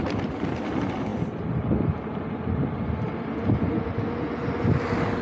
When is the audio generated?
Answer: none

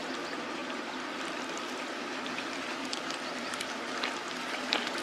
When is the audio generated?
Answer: none

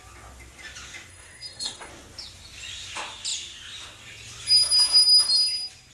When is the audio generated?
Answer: 1.1-1.9

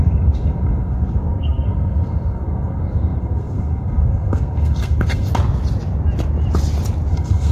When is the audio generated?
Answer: 0.0-5.3; 7.1-7.5

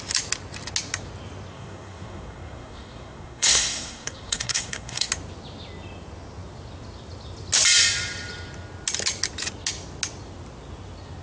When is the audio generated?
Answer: 1.5-5.1

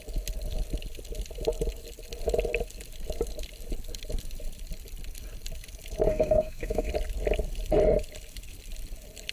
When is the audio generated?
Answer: 6.1-6.9